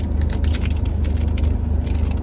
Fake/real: real